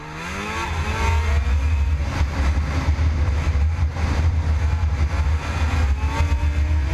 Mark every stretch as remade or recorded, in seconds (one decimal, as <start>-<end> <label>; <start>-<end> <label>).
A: 0.0-2.9 recorded; 2.9-3.5 remade; 3.5-3.9 recorded; 3.9-4.4 remade; 4.4-6.9 recorded